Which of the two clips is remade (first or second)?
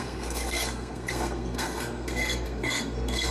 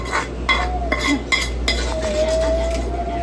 first